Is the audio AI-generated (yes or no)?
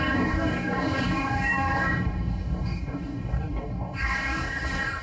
yes